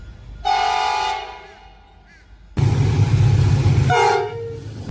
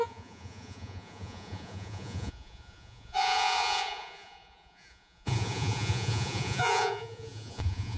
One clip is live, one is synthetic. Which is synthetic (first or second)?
second